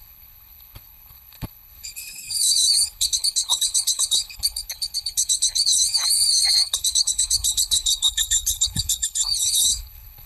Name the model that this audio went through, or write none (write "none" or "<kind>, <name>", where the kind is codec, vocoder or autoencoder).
codec, HILCodec